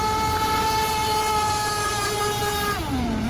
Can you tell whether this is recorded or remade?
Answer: recorded